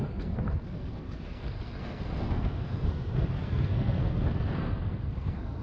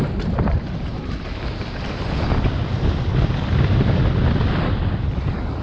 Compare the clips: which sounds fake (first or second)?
first